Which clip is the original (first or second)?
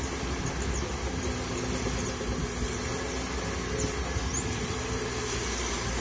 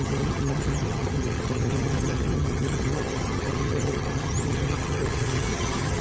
first